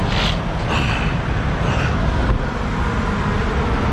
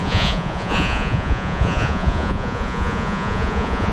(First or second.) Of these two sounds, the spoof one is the second